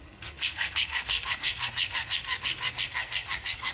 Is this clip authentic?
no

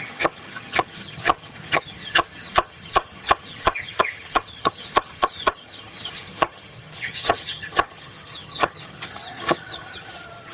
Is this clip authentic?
no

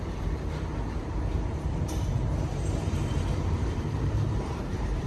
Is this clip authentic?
no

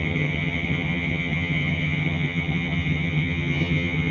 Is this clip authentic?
no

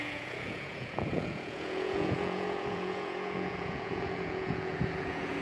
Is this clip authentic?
no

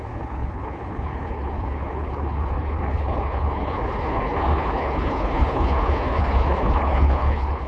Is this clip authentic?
no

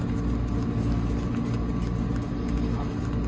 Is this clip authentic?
yes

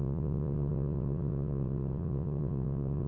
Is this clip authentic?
no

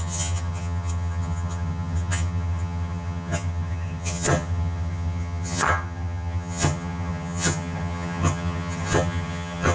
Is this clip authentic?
no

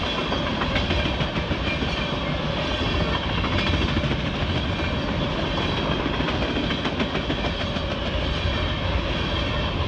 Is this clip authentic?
yes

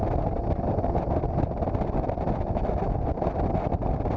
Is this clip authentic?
no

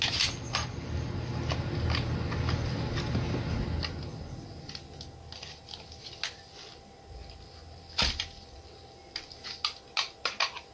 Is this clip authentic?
yes